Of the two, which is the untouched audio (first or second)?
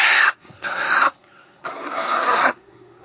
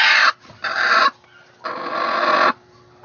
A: second